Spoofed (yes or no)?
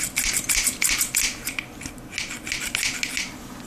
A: no